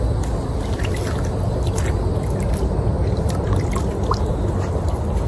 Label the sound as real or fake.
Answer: real